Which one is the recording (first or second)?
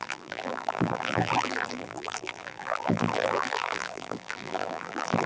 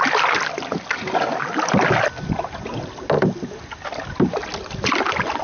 second